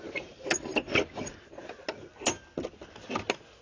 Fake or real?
real